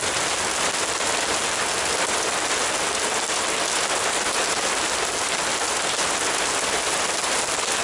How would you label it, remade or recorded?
recorded